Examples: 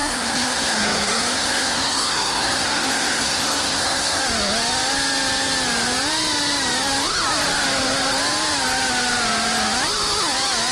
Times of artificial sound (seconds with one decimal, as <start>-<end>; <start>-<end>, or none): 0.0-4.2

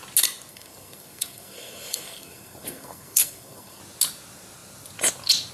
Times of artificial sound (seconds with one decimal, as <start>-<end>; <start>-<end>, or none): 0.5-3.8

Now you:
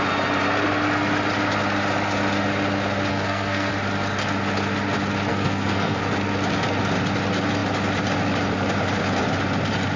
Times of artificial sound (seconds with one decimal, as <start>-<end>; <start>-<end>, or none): 3.1-3.7; 5.3-6.0

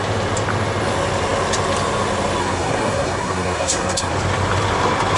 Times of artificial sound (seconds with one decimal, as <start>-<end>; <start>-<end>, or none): 2.4-4.1

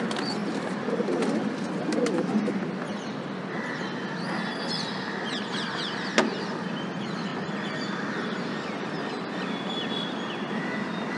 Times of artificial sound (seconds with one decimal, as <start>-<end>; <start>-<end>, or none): none

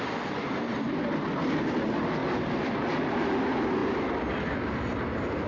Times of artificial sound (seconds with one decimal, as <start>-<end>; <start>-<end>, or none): none

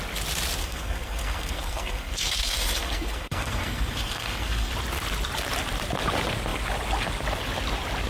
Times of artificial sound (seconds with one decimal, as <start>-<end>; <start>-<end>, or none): 0.6-4.7

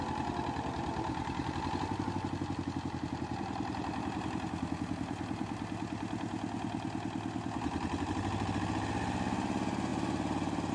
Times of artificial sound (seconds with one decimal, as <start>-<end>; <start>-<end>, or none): none